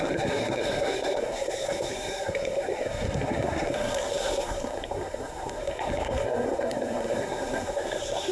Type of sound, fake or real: fake